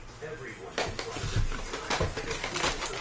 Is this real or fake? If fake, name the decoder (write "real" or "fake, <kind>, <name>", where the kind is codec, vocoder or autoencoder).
real